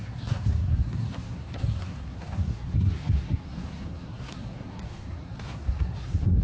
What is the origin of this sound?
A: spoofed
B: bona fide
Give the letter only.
A